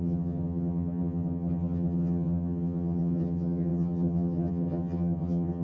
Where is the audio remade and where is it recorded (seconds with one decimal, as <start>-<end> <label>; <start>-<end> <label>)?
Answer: 0.0-5.6 remade